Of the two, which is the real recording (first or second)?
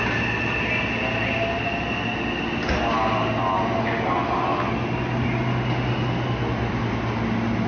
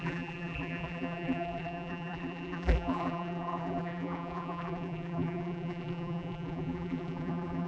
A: first